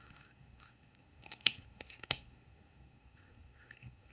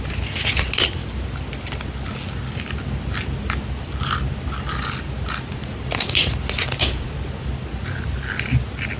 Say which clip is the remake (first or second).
first